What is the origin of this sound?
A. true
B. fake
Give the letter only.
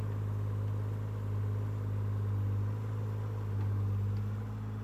A